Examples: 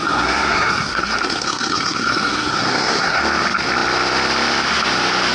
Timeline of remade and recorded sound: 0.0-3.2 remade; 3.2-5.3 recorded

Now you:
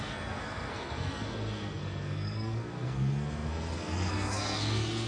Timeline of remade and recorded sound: 0.0-5.1 remade